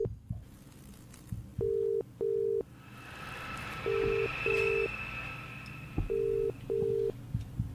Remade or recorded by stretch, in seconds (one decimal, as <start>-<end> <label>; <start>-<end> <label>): 0.0-7.7 recorded